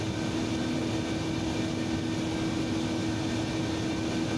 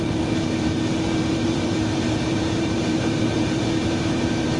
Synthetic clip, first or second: second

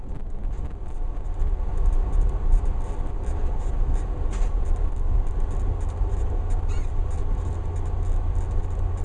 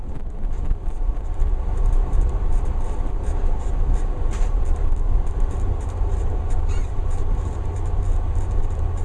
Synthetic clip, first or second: second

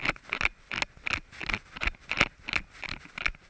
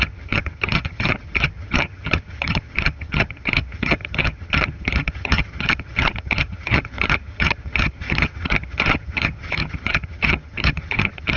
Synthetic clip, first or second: second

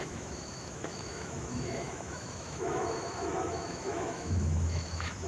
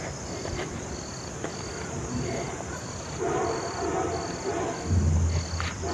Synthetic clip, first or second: first